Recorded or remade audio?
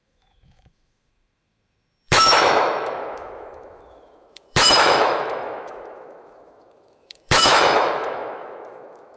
remade